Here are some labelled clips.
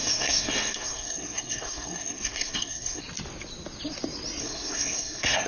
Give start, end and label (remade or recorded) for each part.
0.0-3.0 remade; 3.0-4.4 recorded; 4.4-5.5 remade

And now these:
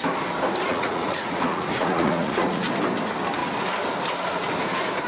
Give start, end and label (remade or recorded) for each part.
0.0-0.7 recorded; 0.7-2.7 remade; 2.7-5.1 recorded